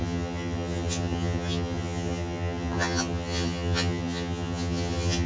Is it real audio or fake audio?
fake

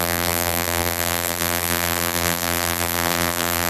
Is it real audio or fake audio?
fake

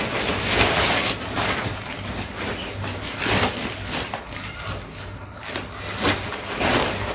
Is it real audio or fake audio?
real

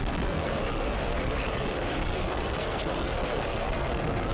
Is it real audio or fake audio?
fake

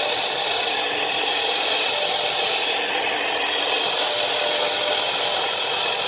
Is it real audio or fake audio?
real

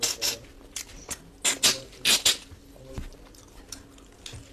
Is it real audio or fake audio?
real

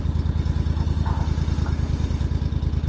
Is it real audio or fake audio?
real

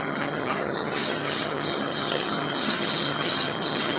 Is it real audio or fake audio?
fake